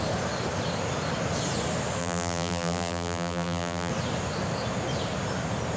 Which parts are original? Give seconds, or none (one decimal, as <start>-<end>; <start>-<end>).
0.0-2.0; 3.9-5.8